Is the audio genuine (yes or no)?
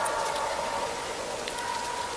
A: no